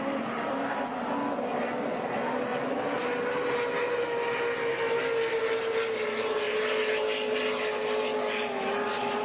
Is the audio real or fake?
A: real